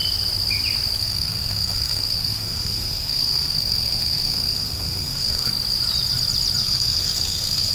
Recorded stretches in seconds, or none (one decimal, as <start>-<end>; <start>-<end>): 0.0-1.0; 5.5-6.6